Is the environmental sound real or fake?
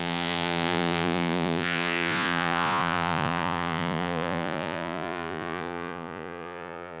fake